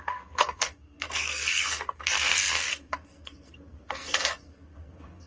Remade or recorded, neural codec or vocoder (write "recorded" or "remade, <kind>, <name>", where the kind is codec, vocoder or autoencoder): remade, codec, SNAC